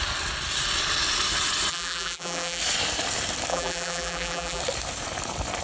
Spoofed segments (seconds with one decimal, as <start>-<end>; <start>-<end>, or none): 1.7-2.6; 3.5-4.6